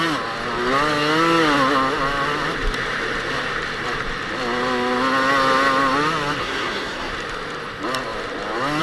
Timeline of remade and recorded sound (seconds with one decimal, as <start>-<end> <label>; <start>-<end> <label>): 0.0-6.4 recorded; 6.4-7.1 remade; 7.1-8.8 recorded